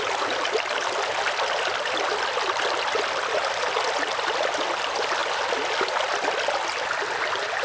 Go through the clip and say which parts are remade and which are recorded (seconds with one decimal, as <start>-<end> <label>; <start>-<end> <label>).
0.0-7.6 recorded